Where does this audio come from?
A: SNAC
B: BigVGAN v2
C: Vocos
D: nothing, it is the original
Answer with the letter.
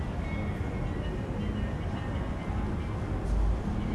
D